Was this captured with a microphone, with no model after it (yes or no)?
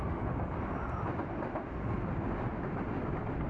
yes